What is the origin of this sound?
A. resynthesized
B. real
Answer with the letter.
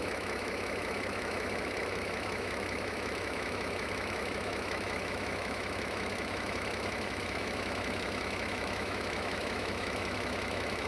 A